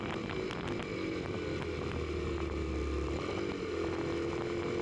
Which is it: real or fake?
real